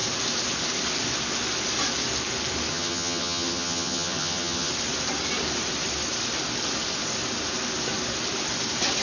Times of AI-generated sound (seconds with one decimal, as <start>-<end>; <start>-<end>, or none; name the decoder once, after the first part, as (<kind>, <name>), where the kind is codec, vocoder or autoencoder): 2.7-4.7 (vocoder, HiFi-GAN)